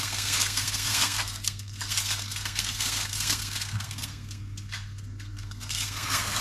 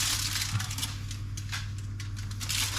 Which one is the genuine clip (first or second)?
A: second